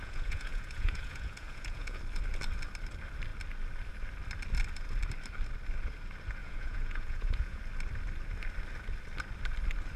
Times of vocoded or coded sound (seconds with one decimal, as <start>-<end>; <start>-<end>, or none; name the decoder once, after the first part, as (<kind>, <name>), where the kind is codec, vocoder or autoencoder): 0.0-2.0 (vocoder, Vocos); 6.4-7.6